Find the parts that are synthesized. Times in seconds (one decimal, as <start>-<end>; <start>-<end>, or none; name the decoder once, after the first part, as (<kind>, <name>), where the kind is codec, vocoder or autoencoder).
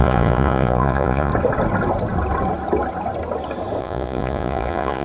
0.0-1.3 (vocoder, Vocos); 3.8-5.0